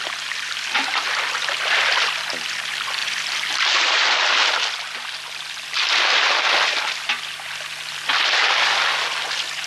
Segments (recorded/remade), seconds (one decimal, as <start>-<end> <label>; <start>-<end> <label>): 0.0-9.7 recorded